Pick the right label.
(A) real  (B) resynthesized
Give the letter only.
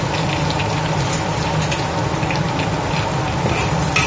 A